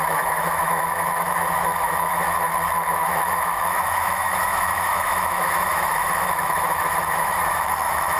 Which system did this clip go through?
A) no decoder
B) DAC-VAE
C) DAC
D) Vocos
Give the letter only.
B